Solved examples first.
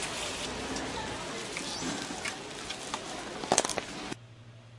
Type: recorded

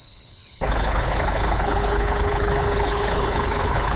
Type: remade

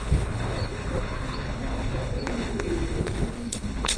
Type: remade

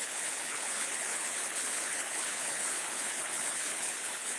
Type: remade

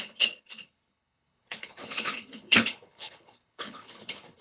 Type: remade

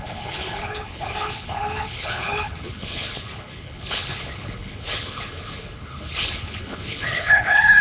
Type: remade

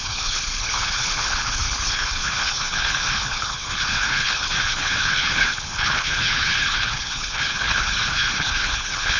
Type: remade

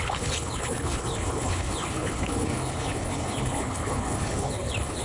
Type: remade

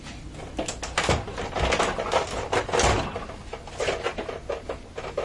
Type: recorded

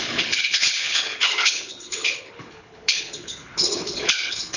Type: remade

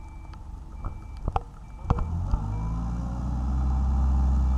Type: recorded